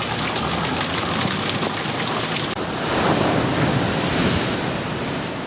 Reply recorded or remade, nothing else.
recorded